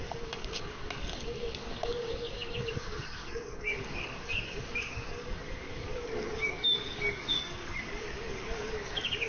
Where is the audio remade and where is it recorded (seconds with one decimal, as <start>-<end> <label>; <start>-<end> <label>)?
0.0-9.3 remade